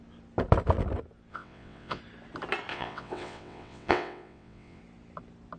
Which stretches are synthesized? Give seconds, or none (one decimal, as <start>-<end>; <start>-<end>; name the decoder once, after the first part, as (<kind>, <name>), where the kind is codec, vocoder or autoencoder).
1.3-2.0 (vocoder, WaveNeXt); 2.7-4.8